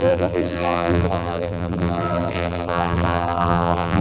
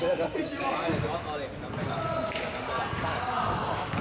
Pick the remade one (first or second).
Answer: first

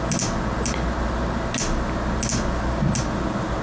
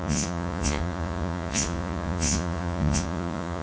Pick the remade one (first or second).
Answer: second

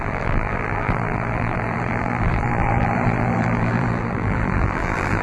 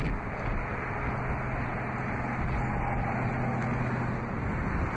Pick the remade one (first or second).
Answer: first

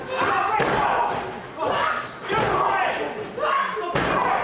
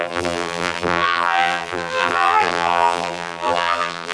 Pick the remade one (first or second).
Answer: second